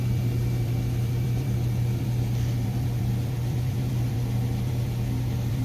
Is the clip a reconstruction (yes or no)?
yes